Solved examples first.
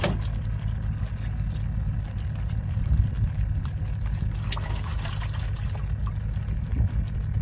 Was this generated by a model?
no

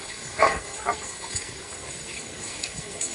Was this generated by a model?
yes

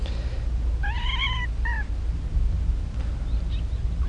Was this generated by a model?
no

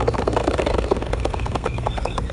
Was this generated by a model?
yes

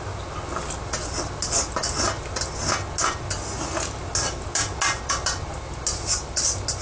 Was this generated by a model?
no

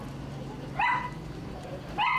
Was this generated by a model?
no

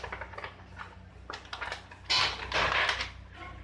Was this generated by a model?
no